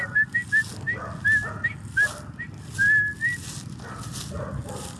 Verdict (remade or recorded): recorded